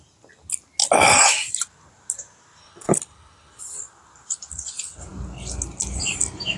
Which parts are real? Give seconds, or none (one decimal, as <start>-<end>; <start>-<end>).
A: 0.0-2.6; 3.6-6.6